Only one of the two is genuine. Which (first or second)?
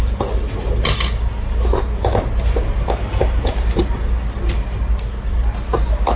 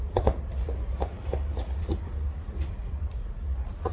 first